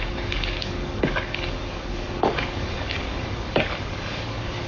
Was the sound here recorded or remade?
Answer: remade